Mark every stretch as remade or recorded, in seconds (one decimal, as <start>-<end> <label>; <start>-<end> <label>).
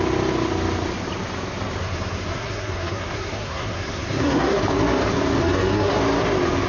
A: 0.0-1.8 recorded; 1.8-4.6 remade; 4.6-5.4 recorded; 5.4-6.0 remade; 6.0-6.7 recorded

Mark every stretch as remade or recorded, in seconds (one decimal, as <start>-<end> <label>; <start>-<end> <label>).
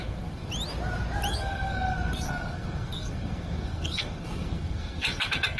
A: 0.0-0.5 remade; 0.5-1.3 recorded; 1.3-5.6 remade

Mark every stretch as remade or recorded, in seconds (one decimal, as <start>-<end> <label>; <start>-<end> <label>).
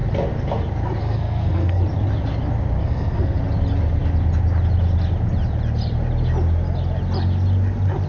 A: 0.0-1.0 recorded; 1.0-1.8 remade; 1.8-2.8 recorded; 2.8-3.4 remade; 3.4-8.1 recorded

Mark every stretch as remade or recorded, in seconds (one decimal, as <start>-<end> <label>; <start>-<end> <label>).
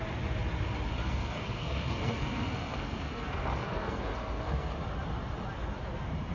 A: 0.0-1.0 recorded; 1.0-4.8 remade; 4.8-6.3 recorded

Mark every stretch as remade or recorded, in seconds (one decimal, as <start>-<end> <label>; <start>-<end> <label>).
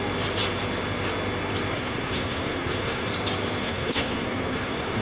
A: 0.0-1.7 recorded; 1.7-3.1 remade; 3.1-3.6 recorded; 3.6-5.0 remade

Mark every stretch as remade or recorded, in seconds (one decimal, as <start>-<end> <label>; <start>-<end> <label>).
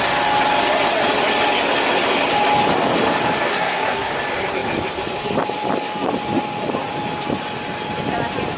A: 0.0-3.5 recorded; 3.5-4.1 remade; 4.1-8.6 recorded